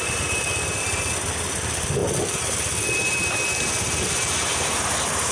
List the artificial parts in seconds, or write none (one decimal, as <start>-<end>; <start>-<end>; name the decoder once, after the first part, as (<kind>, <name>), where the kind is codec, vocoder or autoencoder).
none